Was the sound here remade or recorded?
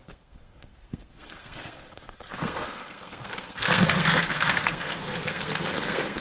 remade